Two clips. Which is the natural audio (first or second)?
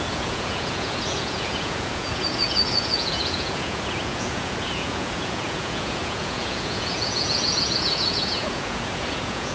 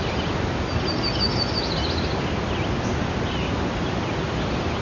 second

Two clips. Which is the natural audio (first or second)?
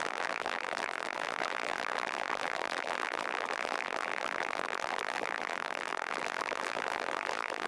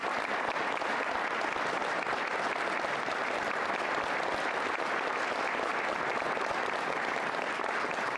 second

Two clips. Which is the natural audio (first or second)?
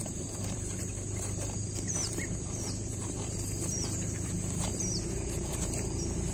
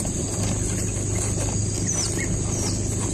second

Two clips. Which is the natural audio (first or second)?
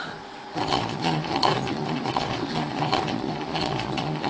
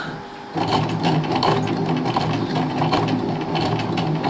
second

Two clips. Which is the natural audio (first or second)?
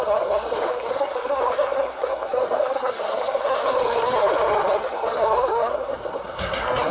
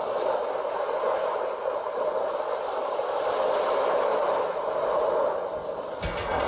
second